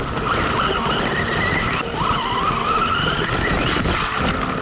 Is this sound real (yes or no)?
yes